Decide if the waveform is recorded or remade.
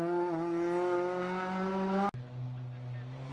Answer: recorded